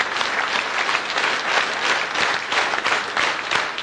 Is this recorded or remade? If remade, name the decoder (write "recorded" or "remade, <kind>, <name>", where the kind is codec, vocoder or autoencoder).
recorded